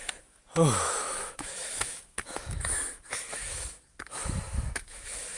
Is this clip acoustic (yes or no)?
no